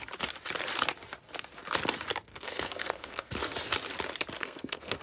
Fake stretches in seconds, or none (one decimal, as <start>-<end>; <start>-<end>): 2.3-3.3; 4.4-5.0